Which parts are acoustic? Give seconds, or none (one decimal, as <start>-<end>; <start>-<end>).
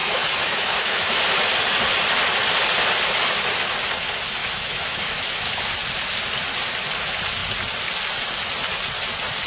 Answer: 1.1-4.4; 5.5-9.5